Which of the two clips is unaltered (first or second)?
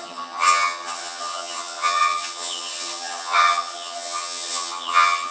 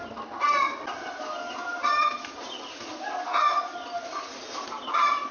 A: second